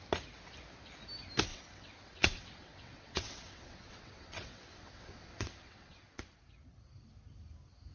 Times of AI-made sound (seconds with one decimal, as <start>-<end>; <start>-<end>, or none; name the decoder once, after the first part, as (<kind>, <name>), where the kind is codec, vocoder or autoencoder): 1.5-6.2 (vocoder, WaveNeXt)